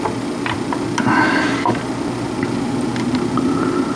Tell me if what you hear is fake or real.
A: real